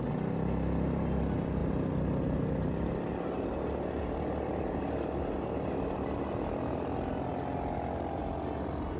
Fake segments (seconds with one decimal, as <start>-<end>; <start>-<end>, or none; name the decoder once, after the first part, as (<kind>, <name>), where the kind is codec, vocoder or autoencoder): none